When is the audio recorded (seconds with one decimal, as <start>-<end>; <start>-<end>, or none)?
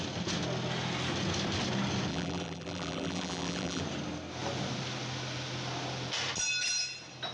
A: 0.0-2.1; 3.8-7.3